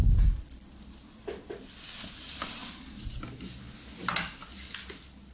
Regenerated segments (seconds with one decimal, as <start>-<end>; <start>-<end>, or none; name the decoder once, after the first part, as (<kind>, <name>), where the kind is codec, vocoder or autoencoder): none